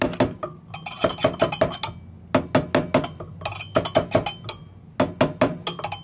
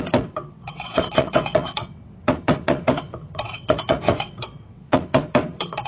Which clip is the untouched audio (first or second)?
first